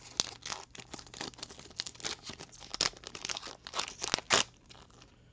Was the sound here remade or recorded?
recorded